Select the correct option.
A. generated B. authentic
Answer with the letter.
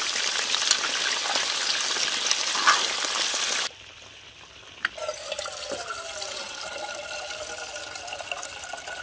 B